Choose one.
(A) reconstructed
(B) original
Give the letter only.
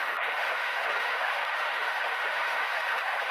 A